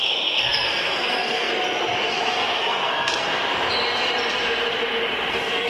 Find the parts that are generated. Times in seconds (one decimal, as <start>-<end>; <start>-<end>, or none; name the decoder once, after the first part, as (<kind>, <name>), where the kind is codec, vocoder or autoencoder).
0.0-1.5 (codec, SNAC); 2.1-3.4; 5.3-5.7